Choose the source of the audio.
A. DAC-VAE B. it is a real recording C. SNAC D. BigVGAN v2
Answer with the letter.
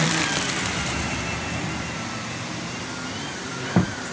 D